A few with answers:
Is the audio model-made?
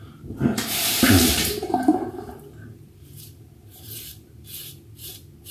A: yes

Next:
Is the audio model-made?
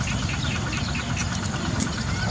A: no